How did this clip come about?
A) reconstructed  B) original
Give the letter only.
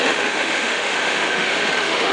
A